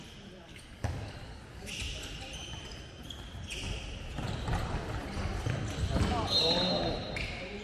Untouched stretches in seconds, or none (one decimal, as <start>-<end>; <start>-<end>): 0.0-0.5; 1.7-7.6

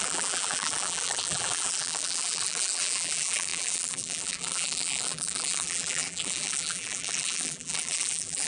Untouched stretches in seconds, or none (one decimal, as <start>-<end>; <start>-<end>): none

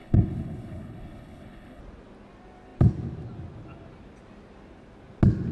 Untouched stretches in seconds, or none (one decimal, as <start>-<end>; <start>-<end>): 1.8-5.5

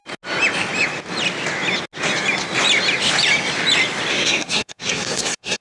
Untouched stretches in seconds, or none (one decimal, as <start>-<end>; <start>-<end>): 0.0-4.1

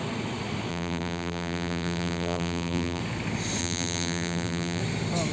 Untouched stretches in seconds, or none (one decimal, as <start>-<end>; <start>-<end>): 0.0-0.7; 3.0-3.6; 4.8-5.3

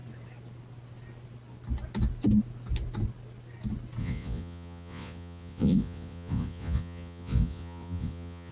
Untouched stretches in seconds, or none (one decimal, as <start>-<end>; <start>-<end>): 0.0-4.0

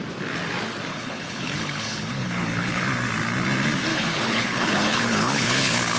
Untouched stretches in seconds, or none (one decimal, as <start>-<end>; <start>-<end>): 0.0-0.9; 2.8-3.9